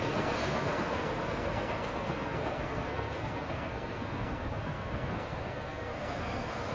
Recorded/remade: remade